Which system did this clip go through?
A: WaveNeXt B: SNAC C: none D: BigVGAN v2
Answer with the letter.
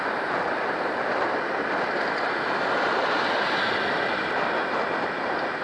D